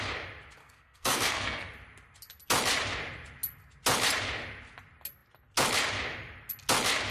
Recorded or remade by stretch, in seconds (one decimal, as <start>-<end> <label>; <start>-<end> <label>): 0.0-0.6 recorded; 0.6-1.7 remade; 1.7-7.1 recorded